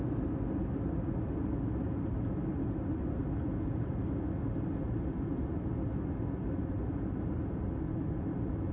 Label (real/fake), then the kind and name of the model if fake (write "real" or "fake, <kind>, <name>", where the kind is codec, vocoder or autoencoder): real